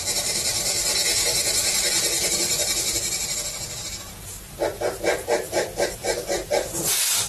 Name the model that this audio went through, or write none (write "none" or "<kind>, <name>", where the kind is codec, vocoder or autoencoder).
none